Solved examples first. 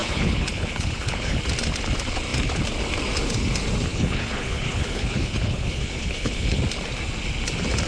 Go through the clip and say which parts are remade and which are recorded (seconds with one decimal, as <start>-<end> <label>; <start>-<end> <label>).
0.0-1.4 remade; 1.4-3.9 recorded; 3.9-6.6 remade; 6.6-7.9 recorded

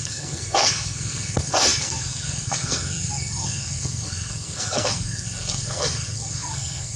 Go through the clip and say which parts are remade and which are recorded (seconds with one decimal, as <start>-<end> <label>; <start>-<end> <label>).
0.0-7.0 remade

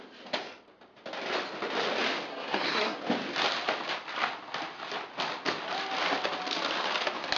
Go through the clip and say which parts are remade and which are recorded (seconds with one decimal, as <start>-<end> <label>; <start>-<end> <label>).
0.0-2.3 recorded; 2.3-3.0 remade; 3.0-7.4 recorded